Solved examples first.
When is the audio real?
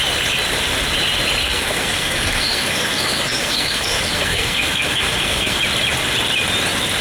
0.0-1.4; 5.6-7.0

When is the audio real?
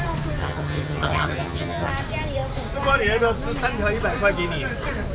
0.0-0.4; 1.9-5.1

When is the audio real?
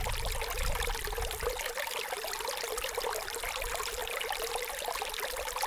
0.0-5.7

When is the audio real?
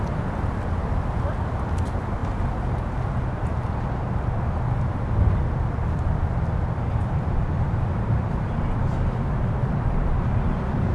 0.0-10.9